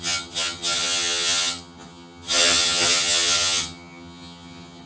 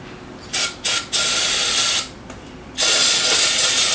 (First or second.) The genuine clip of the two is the second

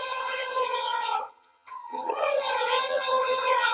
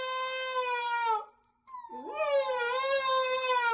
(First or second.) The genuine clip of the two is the second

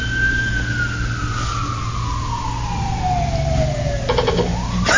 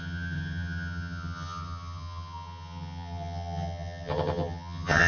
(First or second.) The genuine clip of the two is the first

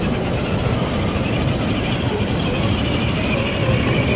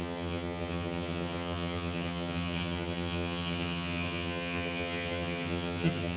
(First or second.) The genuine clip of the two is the first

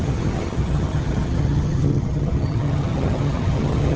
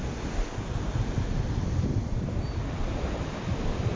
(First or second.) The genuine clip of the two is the second